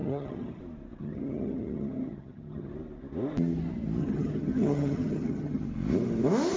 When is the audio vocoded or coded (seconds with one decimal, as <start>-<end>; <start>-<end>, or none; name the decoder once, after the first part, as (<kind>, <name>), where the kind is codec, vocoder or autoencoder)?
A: 0.0-0.6 (vocoder, HiFi-GAN); 1.0-2.7; 4.0-5.6